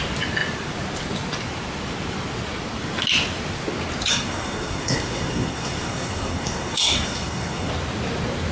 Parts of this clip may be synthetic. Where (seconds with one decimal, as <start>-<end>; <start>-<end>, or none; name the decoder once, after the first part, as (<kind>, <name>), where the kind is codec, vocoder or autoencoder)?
4.1-7.7 (codec, SNAC)